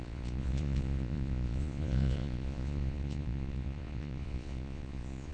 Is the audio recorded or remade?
remade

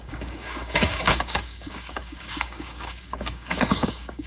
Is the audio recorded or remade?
remade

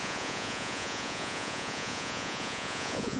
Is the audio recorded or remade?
remade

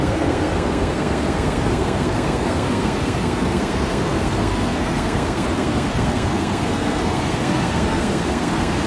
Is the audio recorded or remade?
remade